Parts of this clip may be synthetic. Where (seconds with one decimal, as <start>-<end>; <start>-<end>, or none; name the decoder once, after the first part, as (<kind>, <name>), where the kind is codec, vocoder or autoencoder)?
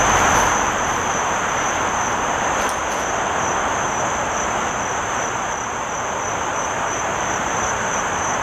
0.0-2.8 (vocoder, BigVGAN v2); 6.5-8.4